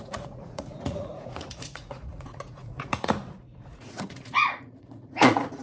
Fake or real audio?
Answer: fake